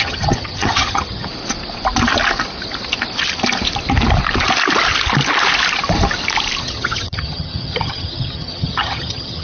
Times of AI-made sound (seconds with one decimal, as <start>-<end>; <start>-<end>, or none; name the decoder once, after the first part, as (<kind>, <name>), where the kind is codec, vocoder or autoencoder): 0.0-1.3 (vocoder, HiFi-GAN); 6.6-9.4